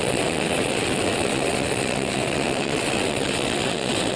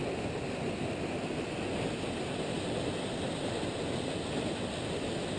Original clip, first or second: second